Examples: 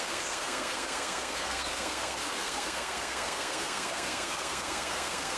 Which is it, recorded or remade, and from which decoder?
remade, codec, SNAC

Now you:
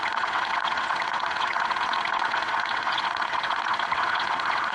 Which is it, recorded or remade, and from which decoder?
remade, vocoder, WaveNeXt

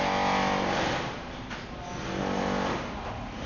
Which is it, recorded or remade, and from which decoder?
recorded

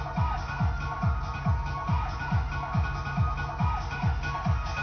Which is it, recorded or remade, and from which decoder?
recorded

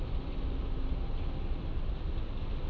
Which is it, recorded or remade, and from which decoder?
recorded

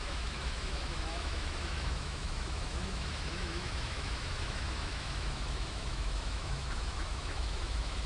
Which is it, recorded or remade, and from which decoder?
remade, autoencoder, DAC-VAE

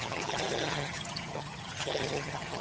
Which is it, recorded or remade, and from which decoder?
remade, vocoder, HiFi-GAN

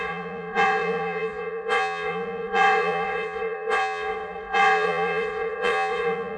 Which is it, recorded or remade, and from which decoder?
remade, vocoder, Vocos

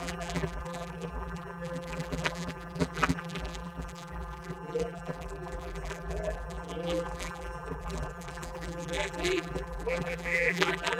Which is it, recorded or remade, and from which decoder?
remade, vocoder, BigVGAN v2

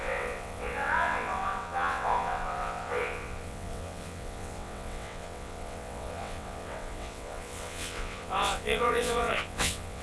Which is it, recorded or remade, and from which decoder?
remade, vocoder, WaveNeXt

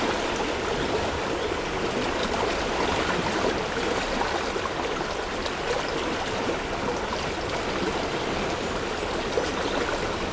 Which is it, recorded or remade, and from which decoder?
recorded